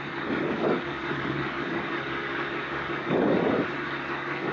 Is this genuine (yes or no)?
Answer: no